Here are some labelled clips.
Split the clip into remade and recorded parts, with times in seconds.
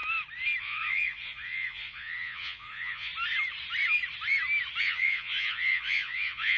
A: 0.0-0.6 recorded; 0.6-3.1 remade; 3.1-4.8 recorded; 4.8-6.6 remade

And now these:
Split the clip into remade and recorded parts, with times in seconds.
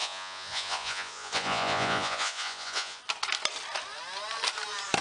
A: 0.0-3.0 remade; 3.0-5.0 recorded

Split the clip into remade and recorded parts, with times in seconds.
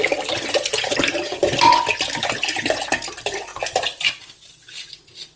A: 0.0-5.4 recorded